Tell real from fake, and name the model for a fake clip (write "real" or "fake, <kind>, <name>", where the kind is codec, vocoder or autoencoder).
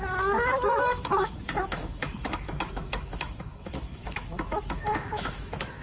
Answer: fake, autoencoder, DAC-VAE